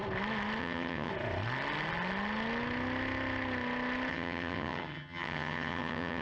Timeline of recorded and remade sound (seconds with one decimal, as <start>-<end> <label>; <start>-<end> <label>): 0.0-0.6 recorded; 0.6-1.1 remade; 1.1-4.1 recorded; 4.1-6.2 remade